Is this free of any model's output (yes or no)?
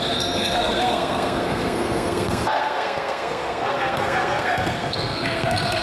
no